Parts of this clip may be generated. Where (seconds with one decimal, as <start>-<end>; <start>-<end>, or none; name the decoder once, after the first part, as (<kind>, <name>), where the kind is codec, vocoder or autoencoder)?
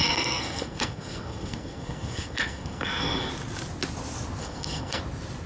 0.0-3.3 (codec, SNAC); 4.4-5.0